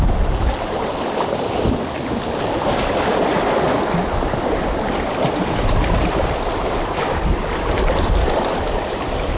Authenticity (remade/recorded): recorded